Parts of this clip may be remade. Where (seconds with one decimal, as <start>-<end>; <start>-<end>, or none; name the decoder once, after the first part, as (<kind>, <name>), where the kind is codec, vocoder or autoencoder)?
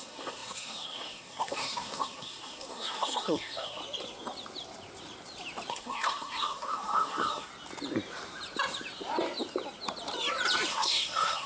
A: 0.0-3.8 (codec, SNAC); 5.7-7.5; 10.7-11.5